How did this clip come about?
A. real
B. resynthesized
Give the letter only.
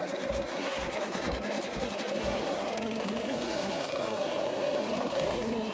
B